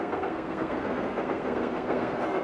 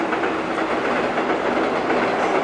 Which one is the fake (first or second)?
first